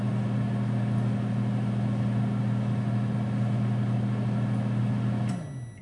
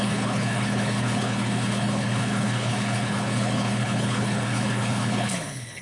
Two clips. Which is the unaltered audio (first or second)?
first